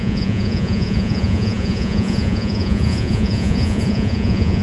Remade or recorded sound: remade